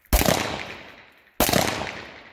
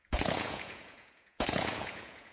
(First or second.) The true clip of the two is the first